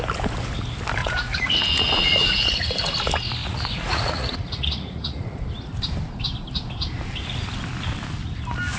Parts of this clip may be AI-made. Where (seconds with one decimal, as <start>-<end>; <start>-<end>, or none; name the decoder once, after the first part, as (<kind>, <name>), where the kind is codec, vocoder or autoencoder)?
1.0-2.9 (vocoder, Vocos); 3.4-5.4